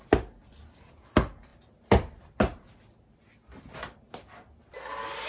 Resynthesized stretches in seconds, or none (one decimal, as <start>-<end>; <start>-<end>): none